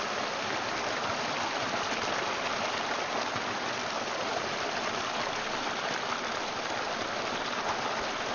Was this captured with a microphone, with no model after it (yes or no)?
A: yes